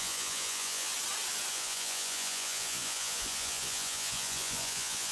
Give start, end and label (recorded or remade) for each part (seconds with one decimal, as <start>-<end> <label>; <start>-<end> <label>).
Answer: 0.0-0.9 remade; 0.9-1.5 recorded; 1.5-5.1 remade